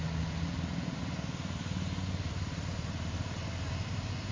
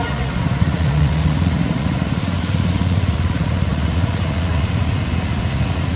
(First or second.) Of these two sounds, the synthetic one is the second